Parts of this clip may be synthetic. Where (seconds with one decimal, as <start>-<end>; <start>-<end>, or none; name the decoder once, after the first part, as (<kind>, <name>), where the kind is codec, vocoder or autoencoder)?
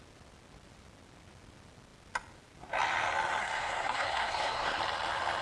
3.4-4.8 (codec, SNAC)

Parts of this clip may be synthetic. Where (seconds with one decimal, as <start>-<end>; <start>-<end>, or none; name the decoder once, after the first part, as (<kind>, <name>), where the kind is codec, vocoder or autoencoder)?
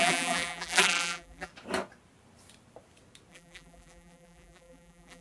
0.0-1.5 (vocoder, BigVGAN v2); 3.3-5.2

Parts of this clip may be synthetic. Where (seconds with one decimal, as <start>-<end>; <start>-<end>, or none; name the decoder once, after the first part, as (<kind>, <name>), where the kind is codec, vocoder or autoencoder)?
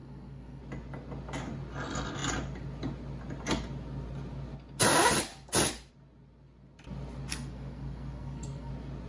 0.0-0.6 (codec, SNAC); 7.3-8.7